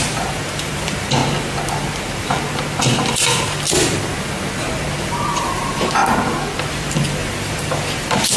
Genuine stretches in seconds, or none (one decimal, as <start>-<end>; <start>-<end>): 1.2-5.4; 6.0-6.7